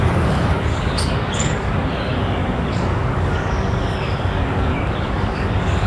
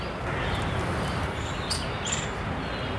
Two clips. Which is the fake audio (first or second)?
first